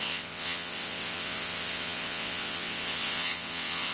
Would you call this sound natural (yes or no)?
no